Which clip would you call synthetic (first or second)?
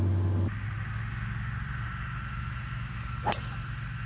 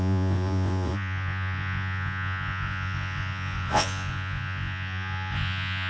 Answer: second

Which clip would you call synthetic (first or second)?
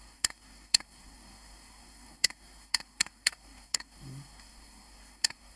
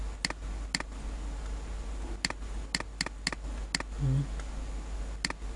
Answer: first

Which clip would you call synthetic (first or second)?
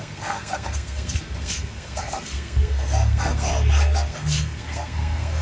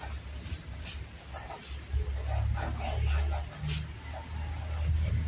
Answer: first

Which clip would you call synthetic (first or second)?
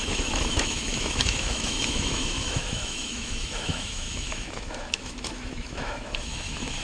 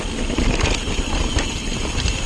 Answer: first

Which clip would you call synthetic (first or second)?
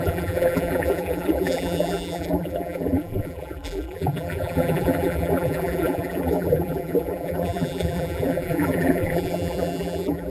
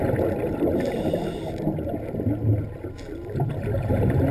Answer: first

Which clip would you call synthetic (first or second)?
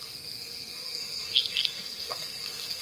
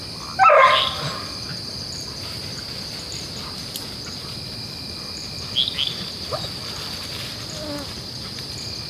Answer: first